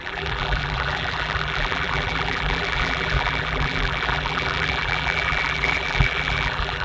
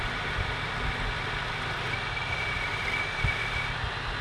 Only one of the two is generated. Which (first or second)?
first